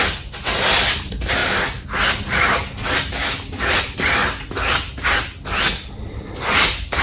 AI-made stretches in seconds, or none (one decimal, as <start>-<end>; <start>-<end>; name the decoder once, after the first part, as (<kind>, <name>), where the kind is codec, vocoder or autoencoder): 0.0-1.4 (vocoder, BigVGAN v2); 3.8-4.2; 5.2-7.0